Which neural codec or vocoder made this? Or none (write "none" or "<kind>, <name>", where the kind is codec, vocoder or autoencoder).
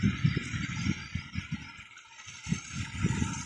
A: none